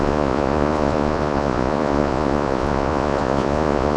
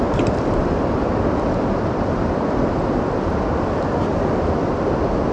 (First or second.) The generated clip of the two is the first